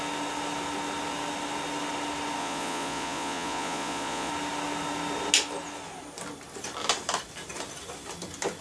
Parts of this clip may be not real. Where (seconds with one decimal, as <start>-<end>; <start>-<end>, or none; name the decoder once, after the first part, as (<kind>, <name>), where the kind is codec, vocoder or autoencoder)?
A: 2.4-4.3 (vocoder, Vocos)